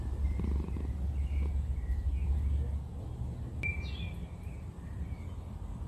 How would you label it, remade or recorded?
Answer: recorded